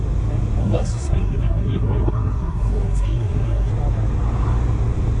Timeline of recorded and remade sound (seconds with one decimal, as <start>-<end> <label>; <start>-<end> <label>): 0.0-0.6 recorded; 0.6-3.7 remade; 3.7-5.2 recorded